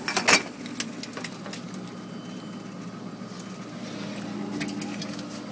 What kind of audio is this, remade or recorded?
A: recorded